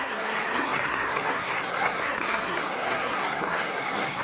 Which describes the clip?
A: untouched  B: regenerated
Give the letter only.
B